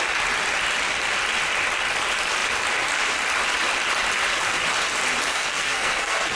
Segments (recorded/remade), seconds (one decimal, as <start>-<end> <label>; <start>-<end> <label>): 0.0-5.3 recorded; 5.3-6.4 remade

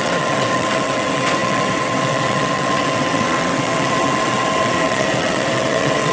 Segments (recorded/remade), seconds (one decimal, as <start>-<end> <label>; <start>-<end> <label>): 0.0-6.1 remade